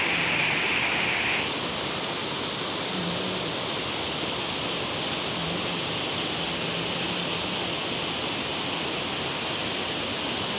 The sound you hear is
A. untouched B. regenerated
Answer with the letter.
A